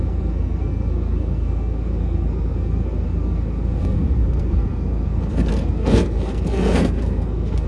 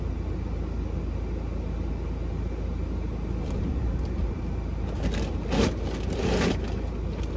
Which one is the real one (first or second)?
second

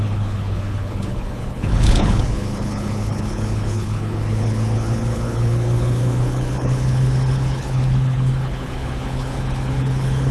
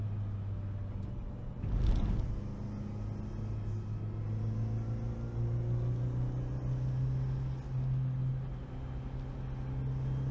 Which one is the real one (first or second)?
second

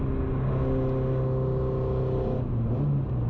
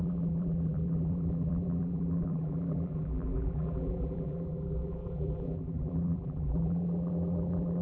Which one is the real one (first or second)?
first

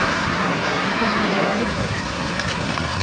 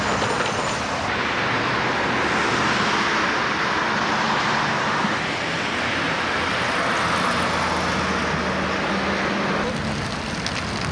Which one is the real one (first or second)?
second